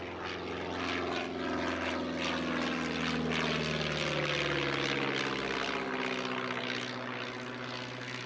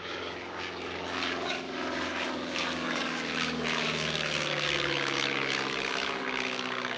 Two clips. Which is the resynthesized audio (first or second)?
second